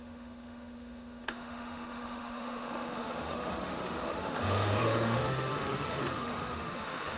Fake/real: fake